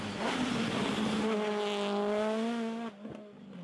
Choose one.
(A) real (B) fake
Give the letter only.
A